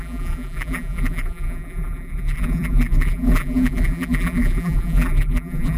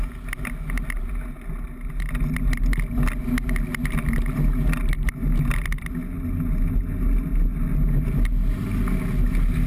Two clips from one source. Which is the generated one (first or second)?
first